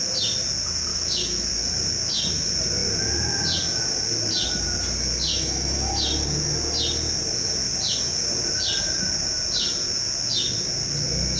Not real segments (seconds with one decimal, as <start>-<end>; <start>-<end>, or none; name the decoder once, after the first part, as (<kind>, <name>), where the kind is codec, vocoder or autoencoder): 0.9-1.5 (autoencoder, DAC-VAE); 5.3-5.9